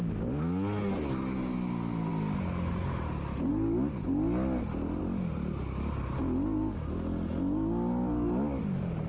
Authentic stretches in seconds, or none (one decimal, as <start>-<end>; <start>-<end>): 0.0-9.1